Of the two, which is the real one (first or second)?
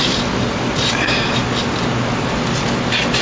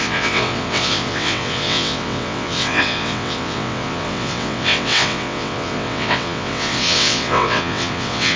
first